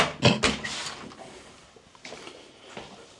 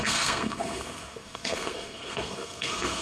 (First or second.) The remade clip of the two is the second